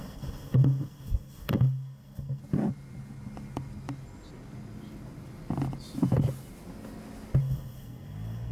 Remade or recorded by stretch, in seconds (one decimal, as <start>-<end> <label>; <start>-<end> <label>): 0.0-2.4 remade; 2.4-7.4 recorded; 7.4-8.5 remade